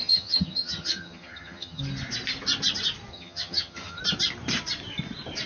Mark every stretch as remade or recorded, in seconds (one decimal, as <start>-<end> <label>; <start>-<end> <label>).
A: 0.0-1.8 remade; 1.8-3.1 recorded; 3.1-4.0 remade; 4.0-5.5 recorded